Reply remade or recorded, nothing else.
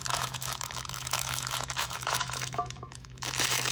remade